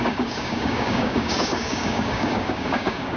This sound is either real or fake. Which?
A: fake